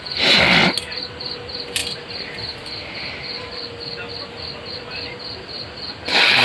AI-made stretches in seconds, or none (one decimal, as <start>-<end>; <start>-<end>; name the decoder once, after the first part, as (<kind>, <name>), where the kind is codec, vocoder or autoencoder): none